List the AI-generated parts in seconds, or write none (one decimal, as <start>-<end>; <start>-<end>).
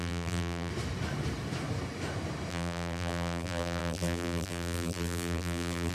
0.0-0.7; 2.5-5.9